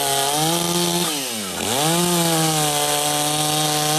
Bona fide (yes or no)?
yes